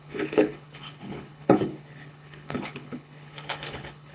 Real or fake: fake